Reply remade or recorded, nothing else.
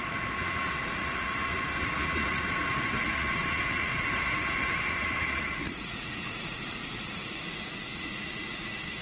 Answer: remade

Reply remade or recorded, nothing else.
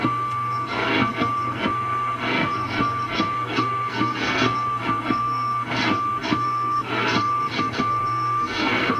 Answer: remade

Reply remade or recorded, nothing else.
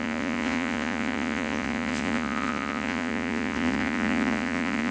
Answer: remade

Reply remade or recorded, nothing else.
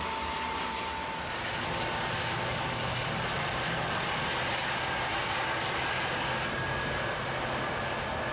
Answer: recorded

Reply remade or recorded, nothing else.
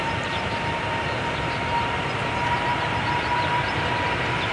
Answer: remade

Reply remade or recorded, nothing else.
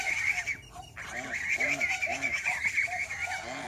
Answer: remade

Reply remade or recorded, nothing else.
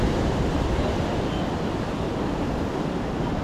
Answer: recorded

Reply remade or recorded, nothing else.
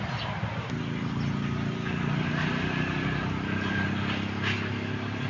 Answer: recorded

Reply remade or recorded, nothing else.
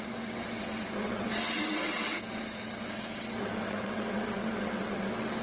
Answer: remade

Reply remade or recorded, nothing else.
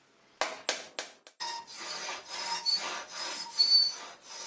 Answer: recorded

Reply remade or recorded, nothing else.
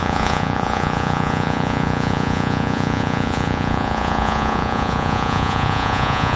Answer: remade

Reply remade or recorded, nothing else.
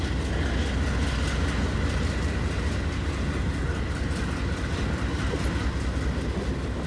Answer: recorded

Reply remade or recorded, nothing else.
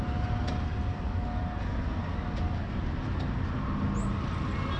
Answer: recorded